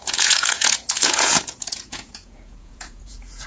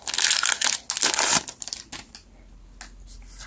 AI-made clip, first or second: first